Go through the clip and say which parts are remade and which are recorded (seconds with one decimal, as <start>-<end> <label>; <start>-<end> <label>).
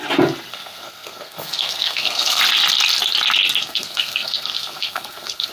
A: 0.0-0.5 recorded; 0.5-2.4 remade; 2.4-3.6 recorded; 3.6-5.5 remade